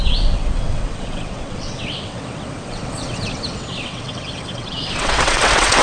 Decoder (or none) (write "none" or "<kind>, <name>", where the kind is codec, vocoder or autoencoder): vocoder, WaveNeXt